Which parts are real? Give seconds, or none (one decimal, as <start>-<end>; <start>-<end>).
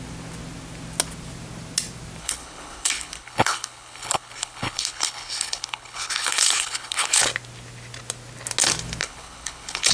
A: 0.0-2.2; 7.2-9.0